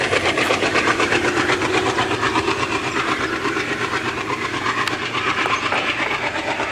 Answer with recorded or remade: remade